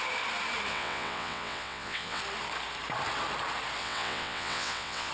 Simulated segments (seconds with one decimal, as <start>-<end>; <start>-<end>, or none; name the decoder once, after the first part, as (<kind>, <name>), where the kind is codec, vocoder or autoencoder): 0.7-2.2 (vocoder, WaveNeXt); 3.8-5.1